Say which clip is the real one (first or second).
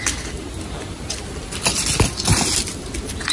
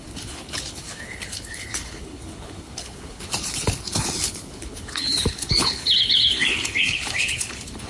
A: first